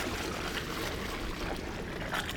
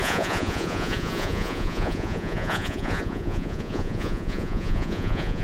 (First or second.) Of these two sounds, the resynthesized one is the second